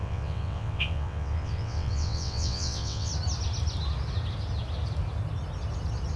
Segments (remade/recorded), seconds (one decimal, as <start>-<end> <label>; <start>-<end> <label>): 0.0-3.1 remade; 3.1-6.2 recorded